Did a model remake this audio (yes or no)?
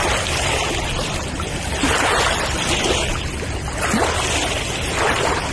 no